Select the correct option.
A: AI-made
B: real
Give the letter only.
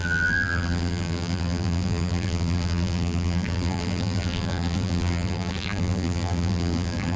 A